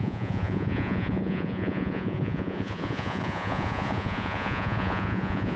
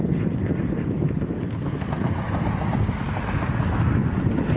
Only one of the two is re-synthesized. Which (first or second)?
first